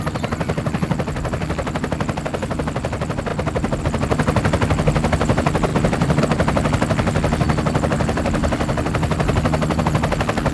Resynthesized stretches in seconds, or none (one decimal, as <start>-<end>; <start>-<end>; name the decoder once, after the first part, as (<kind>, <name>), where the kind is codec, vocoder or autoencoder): 5.7-6.2 (vocoder, BigVGAN v2)